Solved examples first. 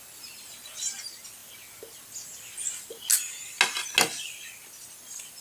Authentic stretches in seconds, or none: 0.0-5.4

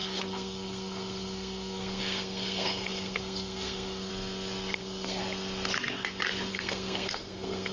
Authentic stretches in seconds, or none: 4.1-4.8; 5.2-6.5

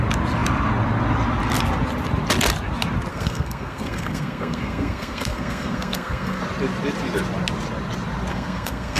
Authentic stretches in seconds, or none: 0.0-3.1; 6.4-8.3